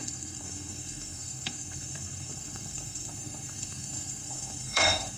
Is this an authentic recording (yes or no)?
no